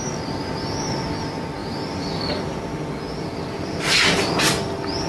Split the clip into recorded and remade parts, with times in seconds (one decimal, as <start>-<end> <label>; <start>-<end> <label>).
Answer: 0.0-5.1 recorded